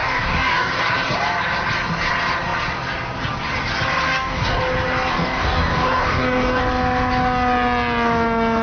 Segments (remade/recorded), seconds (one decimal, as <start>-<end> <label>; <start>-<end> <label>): 0.0-0.7 remade; 0.7-4.0 recorded; 4.0-4.6 remade; 4.6-5.1 recorded; 5.1-6.6 remade; 6.6-8.6 recorded